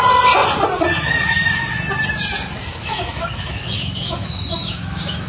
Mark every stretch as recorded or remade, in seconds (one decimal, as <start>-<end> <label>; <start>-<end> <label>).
0.0-2.7 recorded; 2.7-5.3 remade